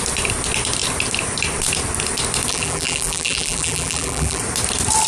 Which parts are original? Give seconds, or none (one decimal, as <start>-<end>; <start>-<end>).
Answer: 0.0-2.5; 4.4-5.1